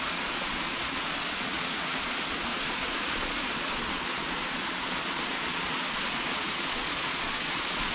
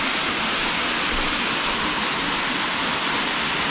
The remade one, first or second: first